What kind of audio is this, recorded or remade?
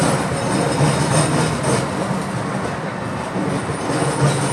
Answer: recorded